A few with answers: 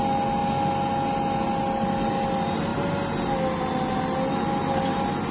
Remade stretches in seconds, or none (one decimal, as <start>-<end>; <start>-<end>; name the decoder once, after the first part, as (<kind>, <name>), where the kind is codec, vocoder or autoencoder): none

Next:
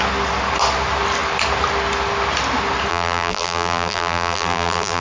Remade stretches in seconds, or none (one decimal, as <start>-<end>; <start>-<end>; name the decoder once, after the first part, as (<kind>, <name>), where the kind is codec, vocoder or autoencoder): 2.9-5.0 (vocoder, BigVGAN v2)

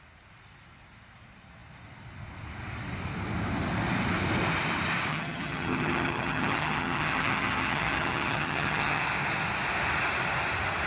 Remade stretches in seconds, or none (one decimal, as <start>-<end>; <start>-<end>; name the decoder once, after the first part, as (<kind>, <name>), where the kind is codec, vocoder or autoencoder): 5.1-9.0 (vocoder, HiFi-GAN)

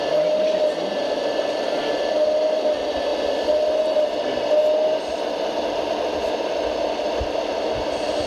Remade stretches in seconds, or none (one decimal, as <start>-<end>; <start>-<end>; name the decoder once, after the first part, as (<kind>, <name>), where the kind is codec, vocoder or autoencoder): none

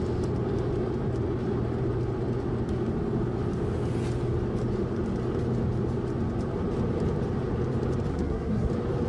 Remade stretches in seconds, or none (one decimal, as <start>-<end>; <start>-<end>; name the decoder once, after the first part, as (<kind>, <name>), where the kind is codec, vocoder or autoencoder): 8.1-8.7 (codec, SNAC)

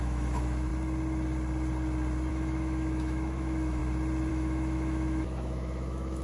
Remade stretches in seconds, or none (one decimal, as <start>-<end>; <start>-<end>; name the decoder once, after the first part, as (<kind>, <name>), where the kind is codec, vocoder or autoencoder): 0.0-0.7 (autoencoder, DAC-VAE); 2.3-3.8; 4.3-6.2

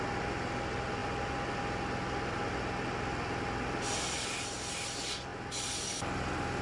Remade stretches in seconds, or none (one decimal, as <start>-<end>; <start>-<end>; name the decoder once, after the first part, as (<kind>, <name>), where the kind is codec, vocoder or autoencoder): none